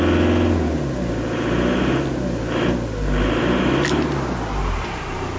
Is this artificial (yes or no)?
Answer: no